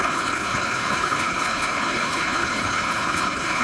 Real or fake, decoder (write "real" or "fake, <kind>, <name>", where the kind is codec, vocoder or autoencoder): fake, codec, HILCodec